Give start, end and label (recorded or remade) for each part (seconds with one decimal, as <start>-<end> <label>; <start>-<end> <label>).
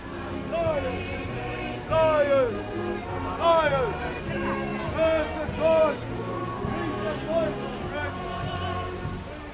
0.0-9.5 recorded